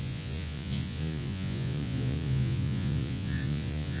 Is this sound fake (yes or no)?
yes